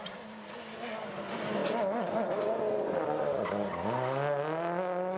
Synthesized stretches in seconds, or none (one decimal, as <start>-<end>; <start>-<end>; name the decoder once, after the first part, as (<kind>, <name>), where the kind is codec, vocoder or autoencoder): none